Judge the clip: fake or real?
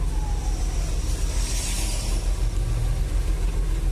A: real